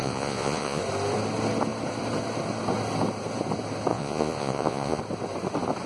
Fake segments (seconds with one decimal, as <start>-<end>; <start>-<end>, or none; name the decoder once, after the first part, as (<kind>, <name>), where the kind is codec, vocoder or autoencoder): 0.0-0.8 (vocoder, Vocos); 3.9-5.0